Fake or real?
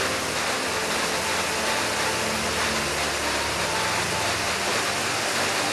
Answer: real